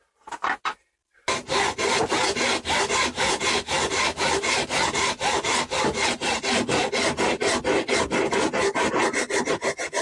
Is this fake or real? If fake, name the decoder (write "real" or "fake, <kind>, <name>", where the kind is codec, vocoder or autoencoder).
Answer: real